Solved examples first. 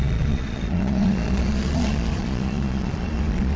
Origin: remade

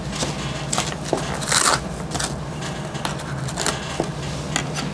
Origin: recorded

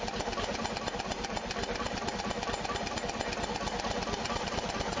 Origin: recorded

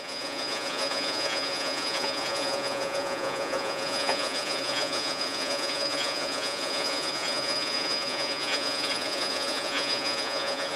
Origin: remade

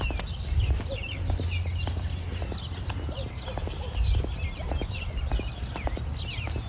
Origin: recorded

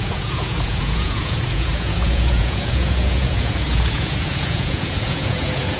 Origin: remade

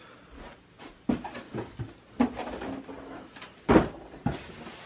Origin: recorded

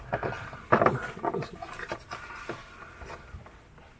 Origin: recorded